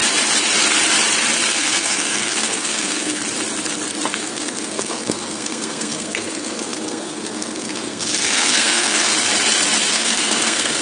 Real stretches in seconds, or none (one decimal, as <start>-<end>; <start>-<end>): 0.0-1.5; 3.2-4.1; 9.1-9.9